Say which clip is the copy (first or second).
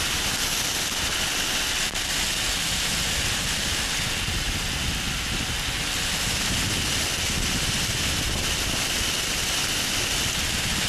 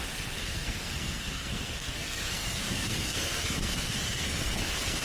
second